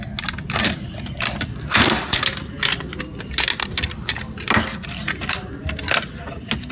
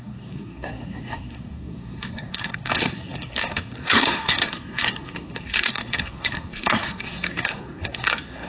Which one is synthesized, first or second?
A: second